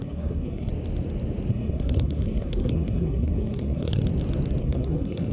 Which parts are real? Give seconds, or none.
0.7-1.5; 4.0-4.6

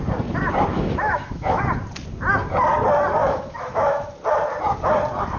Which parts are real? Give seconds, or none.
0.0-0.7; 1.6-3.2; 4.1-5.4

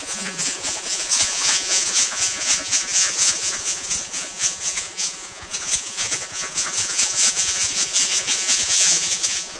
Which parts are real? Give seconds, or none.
none

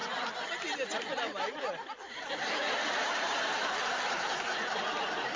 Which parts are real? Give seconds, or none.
0.0-5.4